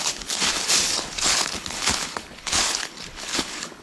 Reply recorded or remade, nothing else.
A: remade